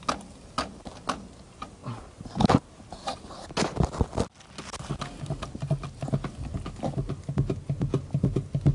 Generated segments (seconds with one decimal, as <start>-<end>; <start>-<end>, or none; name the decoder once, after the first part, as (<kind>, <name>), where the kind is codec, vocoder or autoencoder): none